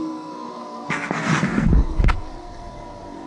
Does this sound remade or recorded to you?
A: remade